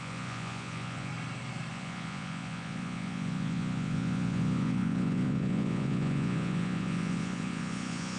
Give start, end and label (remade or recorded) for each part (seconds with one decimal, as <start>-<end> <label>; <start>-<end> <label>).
0.0-1.1 remade; 1.1-1.7 recorded; 1.7-8.2 remade